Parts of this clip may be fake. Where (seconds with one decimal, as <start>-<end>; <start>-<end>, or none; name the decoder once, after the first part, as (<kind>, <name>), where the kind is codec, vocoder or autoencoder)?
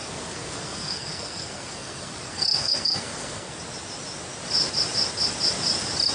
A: 0.0-3.6 (codec, SNAC)